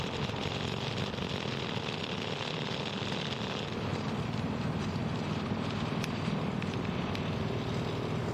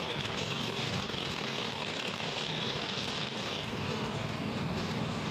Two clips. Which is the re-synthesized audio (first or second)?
second